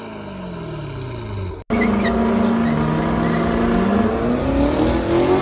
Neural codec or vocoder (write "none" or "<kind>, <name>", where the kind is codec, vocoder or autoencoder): none